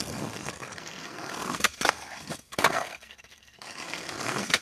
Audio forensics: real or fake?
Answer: fake